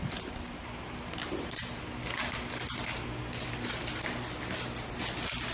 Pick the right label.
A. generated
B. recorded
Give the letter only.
B